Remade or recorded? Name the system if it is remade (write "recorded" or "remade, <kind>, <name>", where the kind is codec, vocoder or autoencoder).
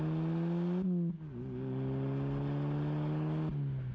recorded